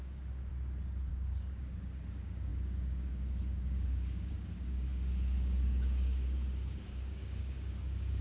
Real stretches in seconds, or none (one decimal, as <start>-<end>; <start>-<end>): 0.5-1.1